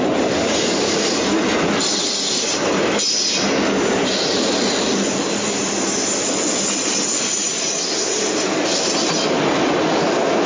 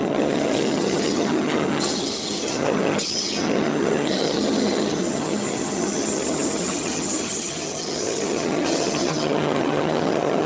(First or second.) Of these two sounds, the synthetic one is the second